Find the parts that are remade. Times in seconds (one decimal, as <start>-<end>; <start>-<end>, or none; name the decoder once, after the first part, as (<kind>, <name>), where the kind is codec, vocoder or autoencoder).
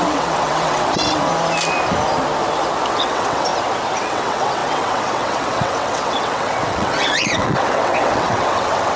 0.0-1.3 (vocoder, WaveNeXt); 2.9-3.5; 4.0-9.0